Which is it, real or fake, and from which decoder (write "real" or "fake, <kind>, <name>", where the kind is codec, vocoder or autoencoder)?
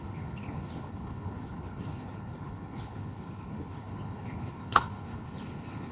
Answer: fake, codec, HILCodec